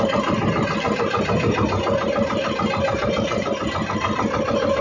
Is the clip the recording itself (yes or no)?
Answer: yes